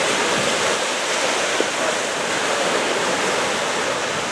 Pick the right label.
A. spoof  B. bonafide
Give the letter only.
B